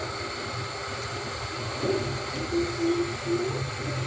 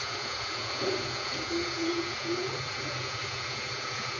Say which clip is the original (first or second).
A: first